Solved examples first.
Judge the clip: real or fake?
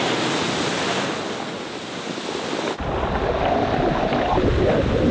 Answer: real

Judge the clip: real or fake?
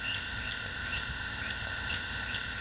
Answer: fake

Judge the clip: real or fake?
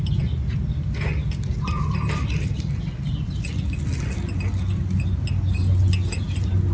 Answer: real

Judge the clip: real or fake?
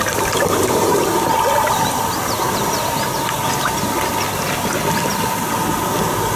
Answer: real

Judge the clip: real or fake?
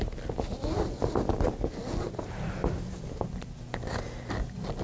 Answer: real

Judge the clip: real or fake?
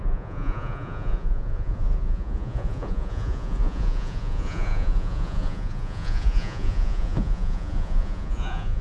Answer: fake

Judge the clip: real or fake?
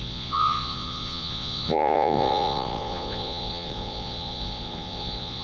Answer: fake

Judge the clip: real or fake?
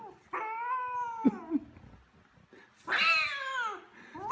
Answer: real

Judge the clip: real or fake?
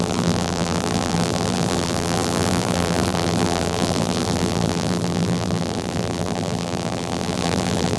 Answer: fake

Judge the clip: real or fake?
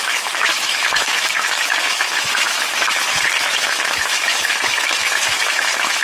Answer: fake